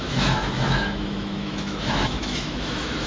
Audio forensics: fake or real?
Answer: fake